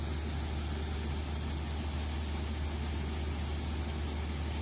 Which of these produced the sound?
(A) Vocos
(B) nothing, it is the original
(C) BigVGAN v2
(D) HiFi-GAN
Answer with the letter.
B